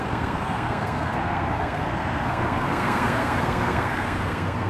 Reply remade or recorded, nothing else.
remade